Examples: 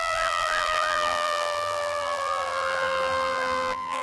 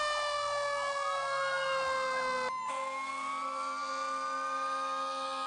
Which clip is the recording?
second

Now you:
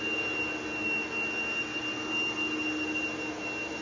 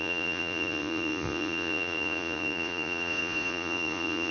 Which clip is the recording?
first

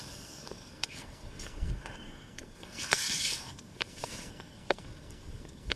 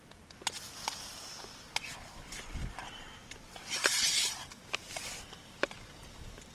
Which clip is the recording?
second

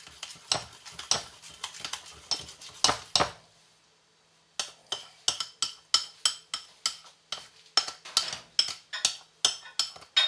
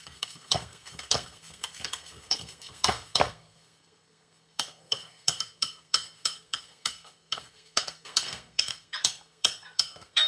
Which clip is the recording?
first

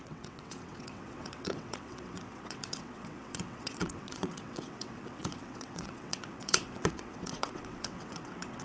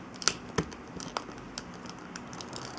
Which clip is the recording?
second